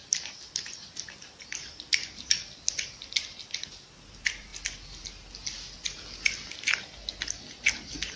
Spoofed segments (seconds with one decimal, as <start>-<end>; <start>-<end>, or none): 0.0-4.5; 7.7-8.2

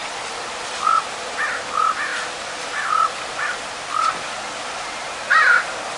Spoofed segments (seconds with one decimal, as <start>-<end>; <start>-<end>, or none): none